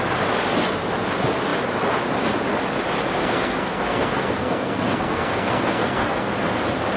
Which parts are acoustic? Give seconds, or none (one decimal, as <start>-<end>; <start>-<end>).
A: 0.0-3.2; 6.3-7.0